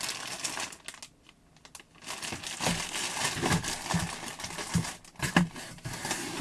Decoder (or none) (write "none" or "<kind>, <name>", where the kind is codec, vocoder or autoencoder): none